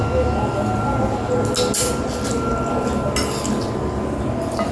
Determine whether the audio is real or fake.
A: real